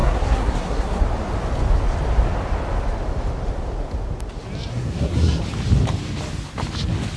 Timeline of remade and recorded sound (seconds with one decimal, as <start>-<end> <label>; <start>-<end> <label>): 0.0-1.0 remade; 1.0-4.7 recorded; 4.7-5.4 remade; 5.4-7.2 recorded